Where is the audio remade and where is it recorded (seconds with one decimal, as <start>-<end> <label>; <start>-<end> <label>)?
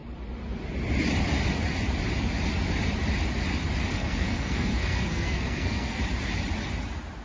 0.0-3.9 recorded; 3.9-6.0 remade; 6.0-7.2 recorded